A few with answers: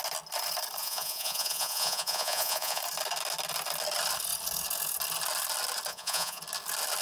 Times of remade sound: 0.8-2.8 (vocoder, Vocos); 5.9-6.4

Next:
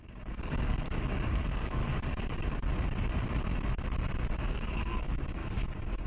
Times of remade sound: 0.0-1.8 (codec, DAC); 4.3-5.4

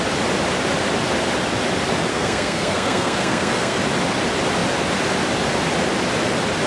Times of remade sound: 2.1-3.8 (codec, SNAC)

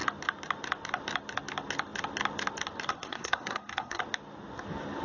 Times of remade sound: 2.9-4.0 (codec, SNAC)

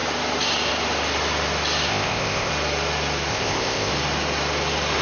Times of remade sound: 1.9-2.5 (codec, ZipCodec); 3.3-3.9

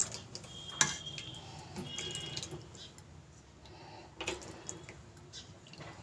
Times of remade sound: none